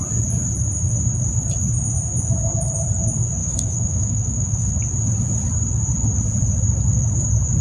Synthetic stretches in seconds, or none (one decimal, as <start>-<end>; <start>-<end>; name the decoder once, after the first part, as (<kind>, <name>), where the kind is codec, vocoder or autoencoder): 3.4-4.7 (autoencoder, DAC-VAE)